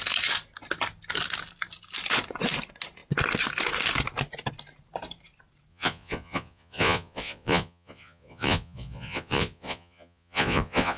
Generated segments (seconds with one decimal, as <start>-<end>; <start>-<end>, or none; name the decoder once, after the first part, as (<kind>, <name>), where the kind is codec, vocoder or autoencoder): 5.7-11.0 (vocoder, Vocos)